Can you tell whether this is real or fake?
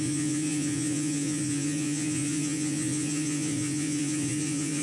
fake